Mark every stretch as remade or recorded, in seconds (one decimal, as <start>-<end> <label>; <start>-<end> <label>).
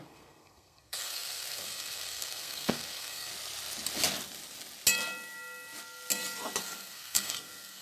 0.0-3.3 remade; 3.3-6.6 recorded; 6.6-7.8 remade